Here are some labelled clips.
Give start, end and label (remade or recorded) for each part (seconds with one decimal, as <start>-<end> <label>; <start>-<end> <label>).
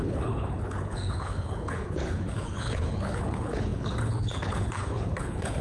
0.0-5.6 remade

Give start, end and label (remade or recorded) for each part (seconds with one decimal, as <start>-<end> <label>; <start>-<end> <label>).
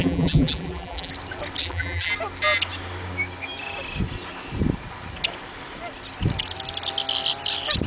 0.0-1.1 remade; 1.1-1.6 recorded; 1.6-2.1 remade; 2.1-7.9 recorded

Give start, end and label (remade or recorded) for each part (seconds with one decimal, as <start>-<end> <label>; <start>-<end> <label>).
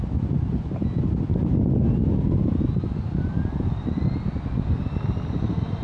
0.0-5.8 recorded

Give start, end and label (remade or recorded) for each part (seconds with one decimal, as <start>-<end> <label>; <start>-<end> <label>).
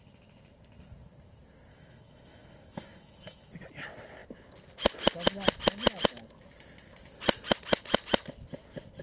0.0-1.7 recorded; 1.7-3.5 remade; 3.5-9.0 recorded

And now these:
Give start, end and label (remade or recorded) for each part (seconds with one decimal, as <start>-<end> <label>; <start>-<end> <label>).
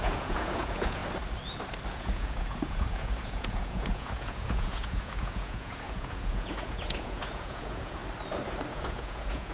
0.0-1.0 remade; 1.0-1.9 recorded; 1.9-8.0 remade; 8.0-8.7 recorded; 8.7-9.5 remade